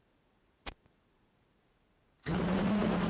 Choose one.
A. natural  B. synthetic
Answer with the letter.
B